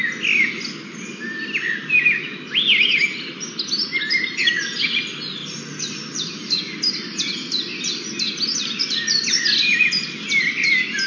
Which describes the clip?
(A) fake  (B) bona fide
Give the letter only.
B